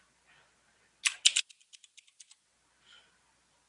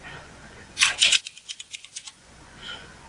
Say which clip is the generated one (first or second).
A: second